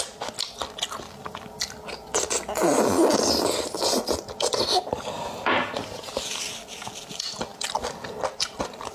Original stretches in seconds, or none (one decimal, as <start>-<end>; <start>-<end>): 0.0-8.9